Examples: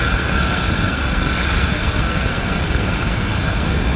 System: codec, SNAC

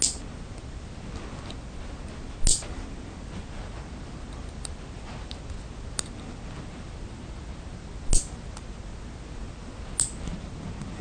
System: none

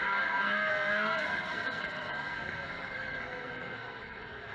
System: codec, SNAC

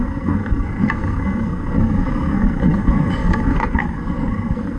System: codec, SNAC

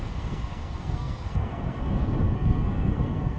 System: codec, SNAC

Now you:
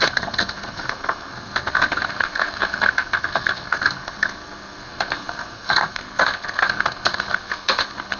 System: codec, SNAC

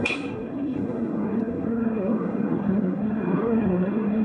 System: codec, SNAC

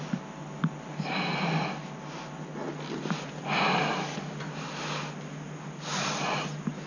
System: none